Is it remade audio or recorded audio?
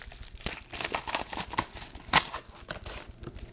recorded